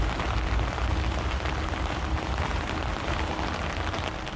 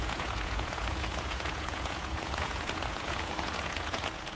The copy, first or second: second